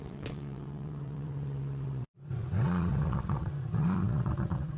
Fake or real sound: fake